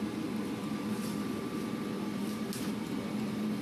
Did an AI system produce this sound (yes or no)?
no